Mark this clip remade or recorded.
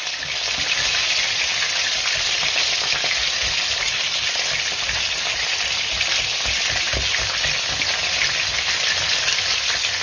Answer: recorded